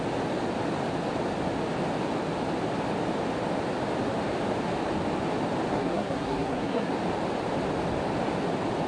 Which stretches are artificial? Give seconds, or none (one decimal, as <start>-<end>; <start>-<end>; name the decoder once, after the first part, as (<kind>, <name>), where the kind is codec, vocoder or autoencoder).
5.7-6.9 (codec, SNAC)